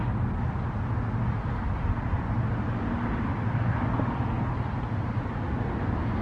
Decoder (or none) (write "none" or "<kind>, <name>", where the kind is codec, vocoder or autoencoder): none